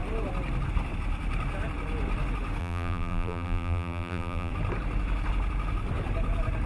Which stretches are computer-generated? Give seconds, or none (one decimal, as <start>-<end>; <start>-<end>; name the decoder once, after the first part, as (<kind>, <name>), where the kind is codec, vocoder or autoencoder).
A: 2.6-4.5 (vocoder, BigVGAN v2)